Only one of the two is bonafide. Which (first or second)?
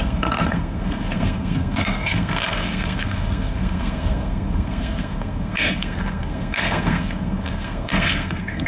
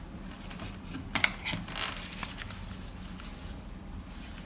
second